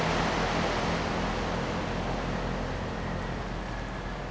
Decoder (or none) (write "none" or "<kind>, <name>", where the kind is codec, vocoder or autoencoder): none